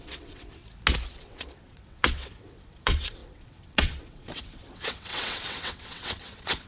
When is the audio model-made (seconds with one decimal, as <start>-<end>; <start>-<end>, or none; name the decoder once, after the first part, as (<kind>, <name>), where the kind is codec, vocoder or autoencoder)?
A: 0.0-0.6 (vocoder, WaveNeXt); 1.1-6.7